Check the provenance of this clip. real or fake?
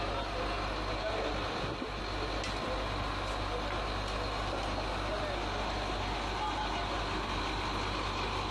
real